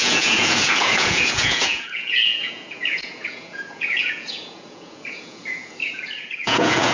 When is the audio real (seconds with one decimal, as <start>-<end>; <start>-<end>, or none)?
none